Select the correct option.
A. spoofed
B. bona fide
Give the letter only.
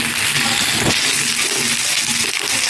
B